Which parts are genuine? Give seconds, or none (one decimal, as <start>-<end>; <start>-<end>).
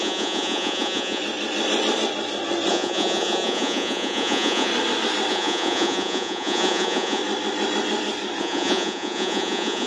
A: 1.2-2.7; 4.7-5.3; 7.2-8.4